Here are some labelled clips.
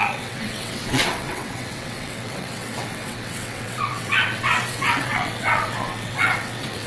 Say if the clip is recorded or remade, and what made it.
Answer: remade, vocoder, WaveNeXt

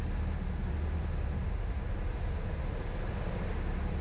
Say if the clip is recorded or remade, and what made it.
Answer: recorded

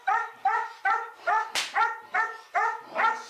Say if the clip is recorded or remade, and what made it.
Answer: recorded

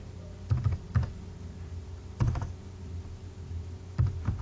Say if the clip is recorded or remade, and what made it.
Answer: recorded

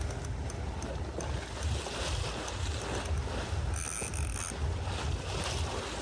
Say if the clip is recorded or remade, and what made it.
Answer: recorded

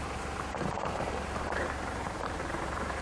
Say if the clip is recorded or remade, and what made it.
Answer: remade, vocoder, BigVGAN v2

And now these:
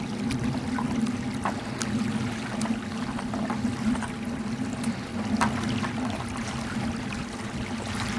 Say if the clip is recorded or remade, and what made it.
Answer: recorded